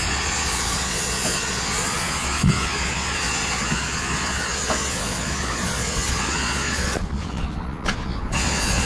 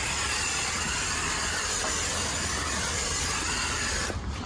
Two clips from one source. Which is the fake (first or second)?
first